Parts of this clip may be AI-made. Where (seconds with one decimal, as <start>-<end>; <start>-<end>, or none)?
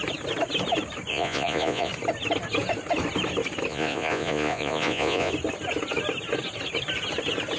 1.1-1.9; 3.7-5.3